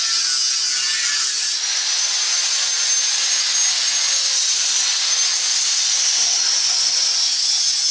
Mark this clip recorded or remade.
recorded